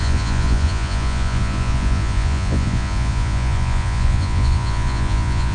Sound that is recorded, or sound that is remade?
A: remade